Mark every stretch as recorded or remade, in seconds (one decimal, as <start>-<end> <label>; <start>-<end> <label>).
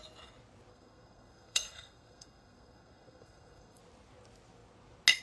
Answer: 0.0-0.7 recorded; 0.7-3.8 remade; 3.8-5.2 recorded